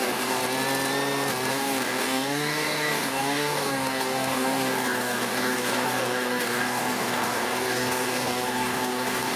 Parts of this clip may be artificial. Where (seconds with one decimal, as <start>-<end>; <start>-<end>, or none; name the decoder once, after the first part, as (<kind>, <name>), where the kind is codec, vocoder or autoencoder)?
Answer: 0.0-0.4 (codec, DAC); 1.5-9.4